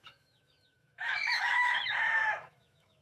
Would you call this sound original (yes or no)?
no